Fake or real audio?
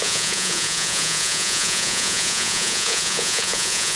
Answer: fake